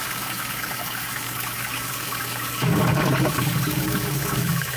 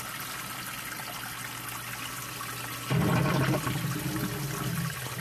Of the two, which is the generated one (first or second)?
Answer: first